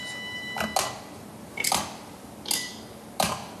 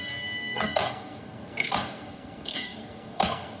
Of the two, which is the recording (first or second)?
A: first